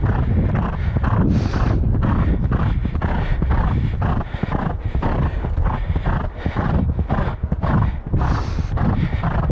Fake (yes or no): no